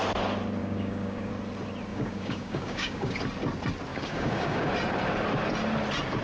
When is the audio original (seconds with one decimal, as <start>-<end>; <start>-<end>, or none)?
0.0-0.6; 1.3-1.9; 3.2-3.9; 4.7-6.2